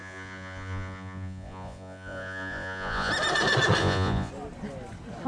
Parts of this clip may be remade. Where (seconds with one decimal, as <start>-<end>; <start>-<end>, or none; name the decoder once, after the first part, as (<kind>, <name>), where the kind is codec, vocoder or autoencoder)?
0.0-3.1 (vocoder, Vocos); 3.8-4.3